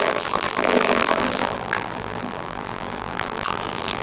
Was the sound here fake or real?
fake